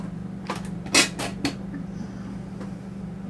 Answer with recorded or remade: recorded